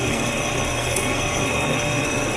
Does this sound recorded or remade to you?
remade